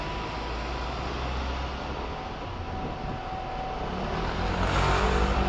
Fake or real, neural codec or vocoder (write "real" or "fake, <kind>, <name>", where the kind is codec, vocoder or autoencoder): real